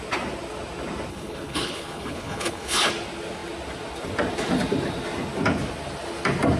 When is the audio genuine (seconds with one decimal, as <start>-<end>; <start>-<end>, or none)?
0.0-1.1; 2.9-6.6